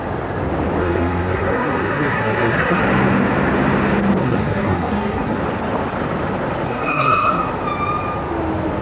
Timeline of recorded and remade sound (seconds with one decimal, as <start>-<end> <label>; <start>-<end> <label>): 0.0-0.8 recorded; 0.8-2.8 remade; 2.8-4.2 recorded; 4.2-5.4 remade; 5.4-6.7 recorded; 6.7-7.5 remade; 7.5-8.8 recorded